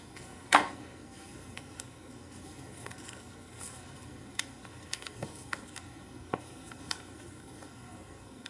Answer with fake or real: fake